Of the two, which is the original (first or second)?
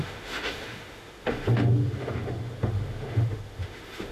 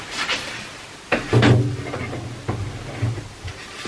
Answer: second